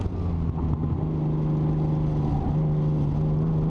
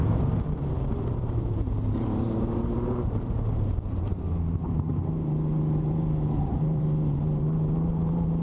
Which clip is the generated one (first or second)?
second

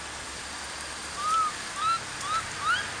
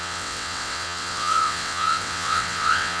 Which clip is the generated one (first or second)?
second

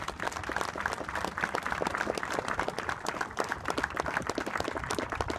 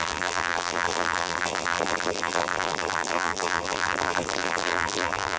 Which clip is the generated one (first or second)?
second